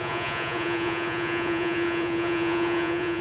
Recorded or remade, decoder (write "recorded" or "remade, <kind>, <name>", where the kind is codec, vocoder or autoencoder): remade, vocoder, Vocos